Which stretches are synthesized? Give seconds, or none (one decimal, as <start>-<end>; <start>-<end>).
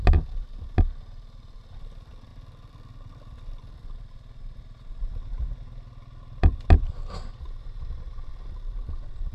none